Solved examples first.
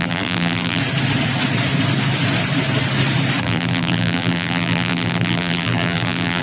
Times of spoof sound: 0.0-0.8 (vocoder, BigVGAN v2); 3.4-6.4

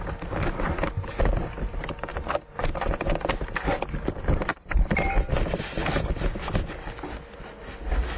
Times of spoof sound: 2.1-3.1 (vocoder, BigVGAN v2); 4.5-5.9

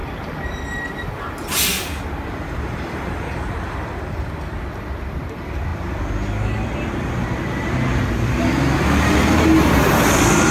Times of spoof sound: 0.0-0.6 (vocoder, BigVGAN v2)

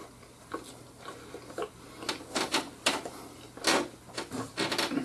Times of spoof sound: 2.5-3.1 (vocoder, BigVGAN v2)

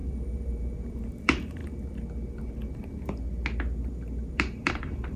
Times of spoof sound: 0.0-1.6 (vocoder, BigVGAN v2); 3.9-5.2

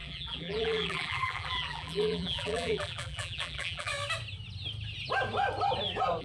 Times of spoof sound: 0.0-3.9 (vocoder, BigVGAN v2)

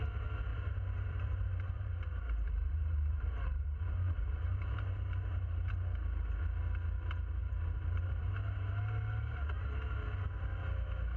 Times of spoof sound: 0.5-5.7 (vocoder, BigVGAN v2); 7.4-8.3